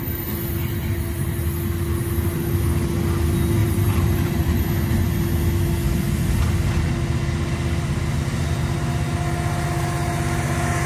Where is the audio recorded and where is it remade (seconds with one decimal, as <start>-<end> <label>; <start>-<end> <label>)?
0.0-3.6 recorded; 3.6-4.6 remade; 4.6-10.9 recorded